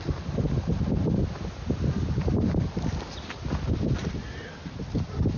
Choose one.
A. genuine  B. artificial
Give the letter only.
A